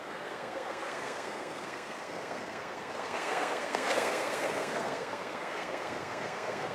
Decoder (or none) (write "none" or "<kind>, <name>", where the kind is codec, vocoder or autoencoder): codec, SNAC